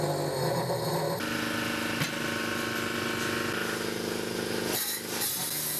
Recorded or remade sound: recorded